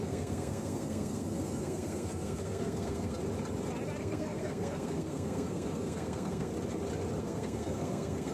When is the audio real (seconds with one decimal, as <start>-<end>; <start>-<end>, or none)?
3.2-4.0; 6.5-7.2

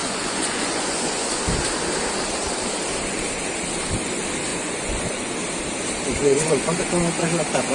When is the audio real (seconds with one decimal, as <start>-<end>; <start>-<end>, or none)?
1.4-4.5; 5.3-6.2; 7.0-7.7

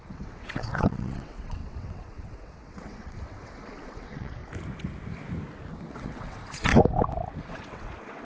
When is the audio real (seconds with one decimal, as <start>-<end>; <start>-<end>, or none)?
4.4-5.9; 6.7-7.4

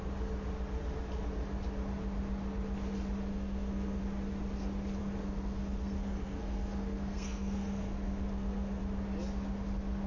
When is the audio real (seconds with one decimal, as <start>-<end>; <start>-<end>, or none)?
0.0-3.3; 4.0-5.0; 8.8-10.1

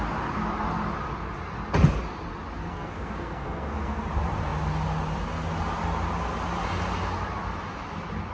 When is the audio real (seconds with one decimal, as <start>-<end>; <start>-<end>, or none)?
0.0-2.7; 4.0-8.3

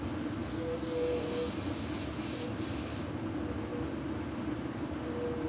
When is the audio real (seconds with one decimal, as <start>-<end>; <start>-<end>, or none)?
0.0-0.5; 1.5-5.5

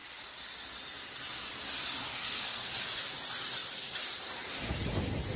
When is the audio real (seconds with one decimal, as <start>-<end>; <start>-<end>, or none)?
0.0-2.1; 2.7-5.4